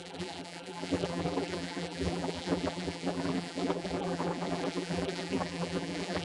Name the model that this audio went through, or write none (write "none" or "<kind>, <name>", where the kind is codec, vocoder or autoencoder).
vocoder, BigVGAN v2